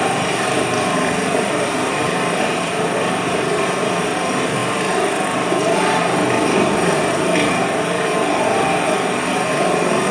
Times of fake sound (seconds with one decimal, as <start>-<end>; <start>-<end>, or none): 0.0-4.6; 5.1-10.1